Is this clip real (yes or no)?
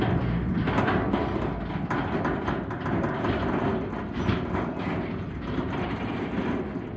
yes